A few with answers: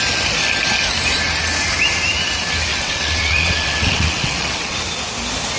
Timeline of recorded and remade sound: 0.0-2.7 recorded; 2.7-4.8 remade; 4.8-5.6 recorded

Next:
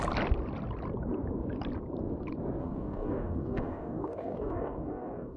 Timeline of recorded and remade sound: 0.0-2.6 recorded; 2.6-5.4 remade

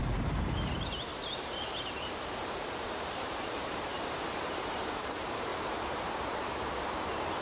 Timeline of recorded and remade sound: 0.0-7.4 remade

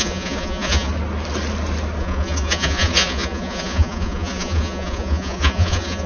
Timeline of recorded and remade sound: 0.0-0.9 remade; 0.9-2.0 recorded; 2.0-6.1 remade

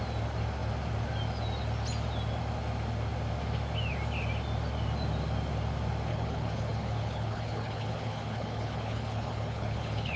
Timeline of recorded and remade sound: 0.0-6.1 recorded; 6.1-10.2 remade

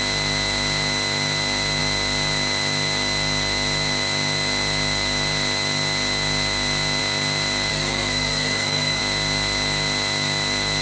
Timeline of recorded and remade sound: 0.0-7.7 recorded; 7.7-9.0 remade; 9.0-10.8 recorded

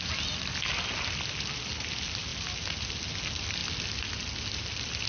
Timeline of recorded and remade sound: 0.0-5.1 recorded